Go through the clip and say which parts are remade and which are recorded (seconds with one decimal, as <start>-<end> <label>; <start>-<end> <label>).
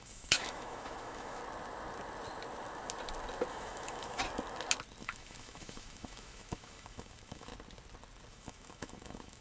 0.0-1.4 remade; 1.4-3.5 recorded; 3.5-4.2 remade; 4.2-5.0 recorded; 5.0-7.5 remade; 7.5-8.3 recorded; 8.3-9.4 remade